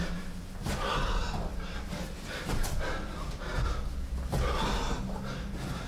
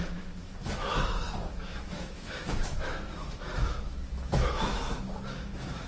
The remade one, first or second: second